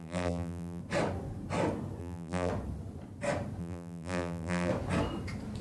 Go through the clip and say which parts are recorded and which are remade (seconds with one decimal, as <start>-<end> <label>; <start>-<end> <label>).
0.0-0.8 remade; 0.8-2.0 recorded; 2.0-2.5 remade; 2.5-3.6 recorded; 3.6-4.7 remade; 4.7-5.6 recorded